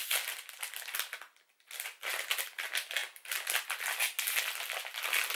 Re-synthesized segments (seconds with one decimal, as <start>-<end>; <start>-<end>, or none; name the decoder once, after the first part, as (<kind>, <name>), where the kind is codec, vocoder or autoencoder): none